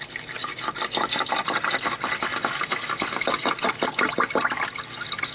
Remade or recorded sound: recorded